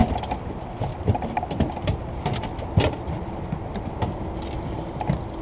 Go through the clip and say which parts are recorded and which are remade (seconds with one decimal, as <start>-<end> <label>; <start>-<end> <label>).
0.0-5.4 recorded